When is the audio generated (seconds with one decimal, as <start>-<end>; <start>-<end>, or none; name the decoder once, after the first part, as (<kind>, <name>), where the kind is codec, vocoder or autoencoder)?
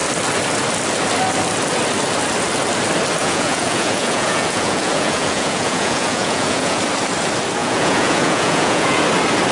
3.2-6.8 (vocoder, Vocos); 7.6-9.0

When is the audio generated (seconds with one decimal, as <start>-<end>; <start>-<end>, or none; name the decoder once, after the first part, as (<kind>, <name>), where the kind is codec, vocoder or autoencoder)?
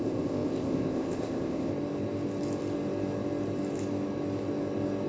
0.0-1.7 (codec, ZipCodec)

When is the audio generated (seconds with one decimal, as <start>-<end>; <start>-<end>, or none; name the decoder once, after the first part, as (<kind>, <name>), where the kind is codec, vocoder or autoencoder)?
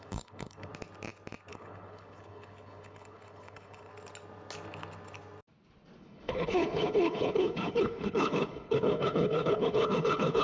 0.0-0.7 (codec, HILCodec); 1.5-3.9; 6.0-10.4